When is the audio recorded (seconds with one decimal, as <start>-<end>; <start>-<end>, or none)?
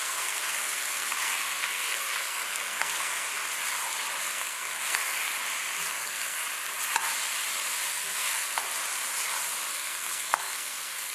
3.4-4.2; 5.2-5.9; 6.4-7.9; 8.6-9.7